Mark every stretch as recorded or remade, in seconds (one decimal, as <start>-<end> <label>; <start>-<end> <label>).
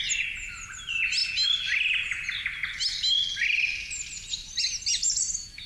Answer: 0.0-5.7 recorded